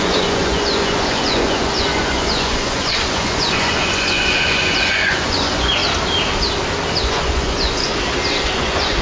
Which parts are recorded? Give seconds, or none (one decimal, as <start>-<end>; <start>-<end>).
5.8-7.0; 7.9-8.4